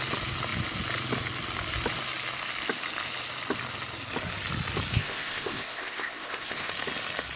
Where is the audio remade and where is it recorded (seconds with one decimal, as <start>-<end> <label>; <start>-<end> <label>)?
0.0-4.9 recorded; 4.9-6.7 remade; 6.7-7.4 recorded